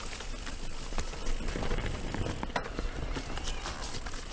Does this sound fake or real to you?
real